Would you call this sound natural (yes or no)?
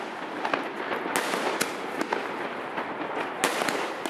yes